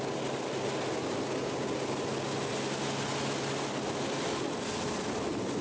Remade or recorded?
recorded